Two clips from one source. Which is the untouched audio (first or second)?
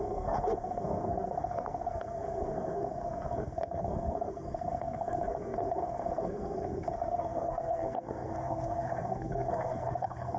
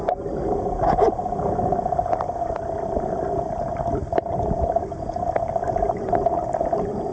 second